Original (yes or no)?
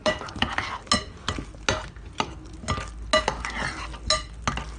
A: yes